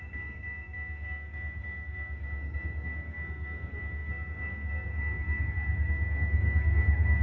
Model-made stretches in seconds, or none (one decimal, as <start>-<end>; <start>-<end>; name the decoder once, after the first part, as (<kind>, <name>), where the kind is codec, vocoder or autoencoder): 0.0-7.2 (codec, SNAC)